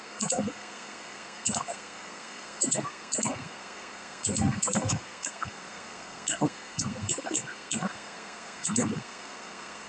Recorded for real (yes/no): no